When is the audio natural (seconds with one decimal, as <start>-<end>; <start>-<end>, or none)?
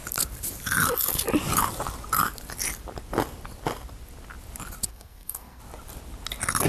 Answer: 0.0-4.9; 5.6-6.7